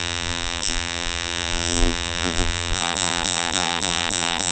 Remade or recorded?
remade